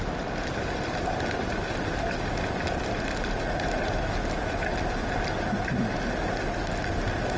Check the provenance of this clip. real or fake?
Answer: real